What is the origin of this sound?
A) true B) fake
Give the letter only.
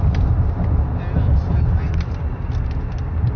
A